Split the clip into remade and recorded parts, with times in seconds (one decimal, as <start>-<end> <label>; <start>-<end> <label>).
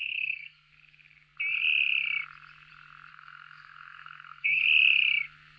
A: 0.0-0.7 remade; 0.7-3.1 recorded; 3.1-4.6 remade; 4.6-5.6 recorded